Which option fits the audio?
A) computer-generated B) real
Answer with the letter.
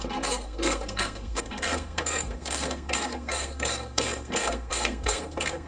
A